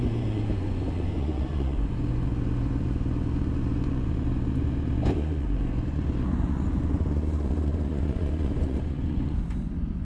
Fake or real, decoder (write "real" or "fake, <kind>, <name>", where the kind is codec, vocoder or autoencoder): fake, vocoder, Vocos